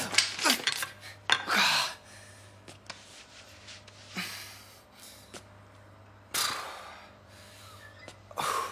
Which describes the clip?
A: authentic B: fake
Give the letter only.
A